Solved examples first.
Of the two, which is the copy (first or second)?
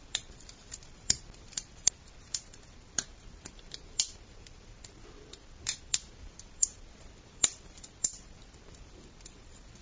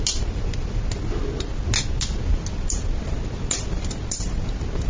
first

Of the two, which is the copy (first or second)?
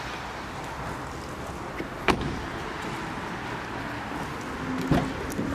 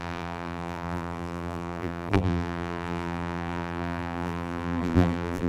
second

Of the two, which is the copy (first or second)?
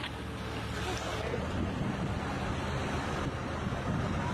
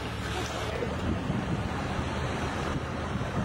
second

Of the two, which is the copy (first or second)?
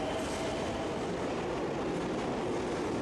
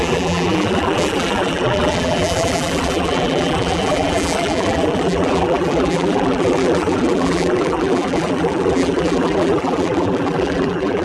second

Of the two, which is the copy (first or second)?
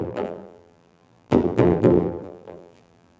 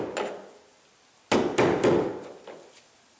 first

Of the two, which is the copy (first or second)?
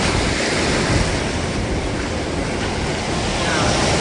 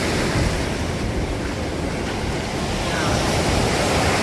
second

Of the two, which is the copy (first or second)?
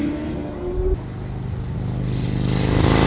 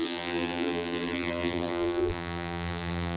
second